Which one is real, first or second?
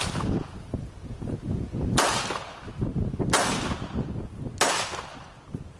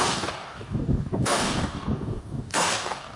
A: first